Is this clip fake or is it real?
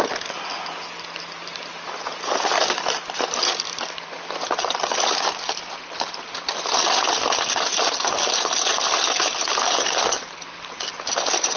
real